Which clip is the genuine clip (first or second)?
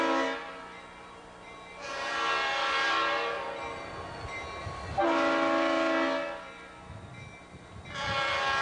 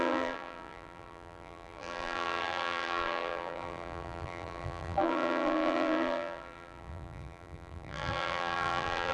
first